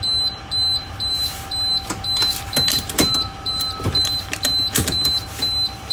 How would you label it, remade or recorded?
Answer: remade